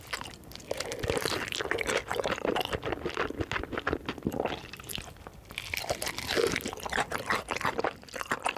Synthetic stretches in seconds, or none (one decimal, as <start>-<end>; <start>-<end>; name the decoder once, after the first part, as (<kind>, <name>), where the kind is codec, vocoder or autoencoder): none